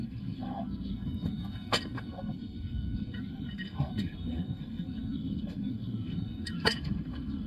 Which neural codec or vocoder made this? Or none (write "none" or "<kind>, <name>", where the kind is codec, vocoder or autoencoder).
codec, SNAC